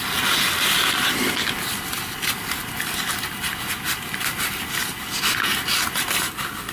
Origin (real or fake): real